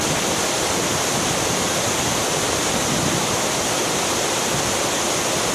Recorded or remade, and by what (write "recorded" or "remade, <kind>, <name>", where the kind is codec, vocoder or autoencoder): recorded